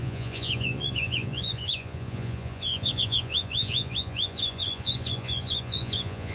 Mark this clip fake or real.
fake